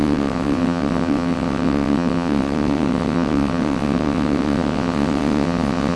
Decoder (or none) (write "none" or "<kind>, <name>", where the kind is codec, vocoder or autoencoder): vocoder, WaveNeXt